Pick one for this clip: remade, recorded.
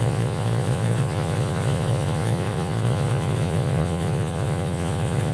remade